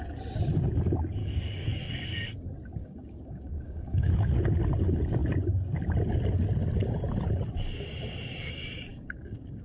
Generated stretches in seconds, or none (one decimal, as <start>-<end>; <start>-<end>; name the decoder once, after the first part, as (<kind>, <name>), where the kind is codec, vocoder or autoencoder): 1.2-2.3 (codec, DAC); 2.8-4.1; 8.9-9.6